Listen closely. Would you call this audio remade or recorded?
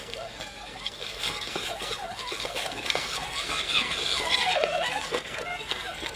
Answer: remade